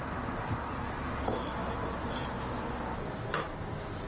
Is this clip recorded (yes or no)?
yes